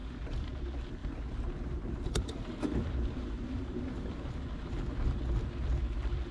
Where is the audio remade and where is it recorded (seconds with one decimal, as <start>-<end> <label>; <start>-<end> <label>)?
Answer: 0.0-0.5 remade; 0.5-1.0 recorded; 1.0-4.8 remade; 4.8-6.3 recorded